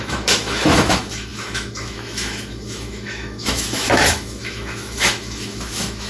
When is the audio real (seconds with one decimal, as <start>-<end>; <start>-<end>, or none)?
none